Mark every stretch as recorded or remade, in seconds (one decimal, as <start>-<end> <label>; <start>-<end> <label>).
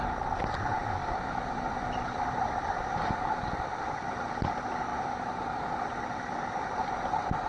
0.0-1.0 recorded; 1.0-4.5 remade; 4.5-7.5 recorded